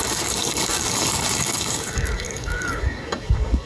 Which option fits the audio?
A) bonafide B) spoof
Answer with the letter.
B